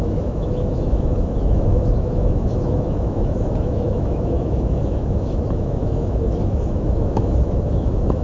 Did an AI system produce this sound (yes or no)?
yes